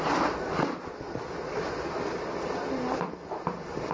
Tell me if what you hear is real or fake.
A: real